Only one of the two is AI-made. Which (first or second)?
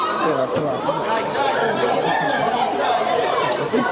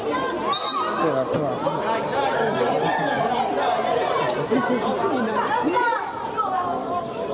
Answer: first